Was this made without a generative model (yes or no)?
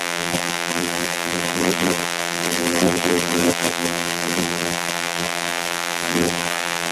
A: no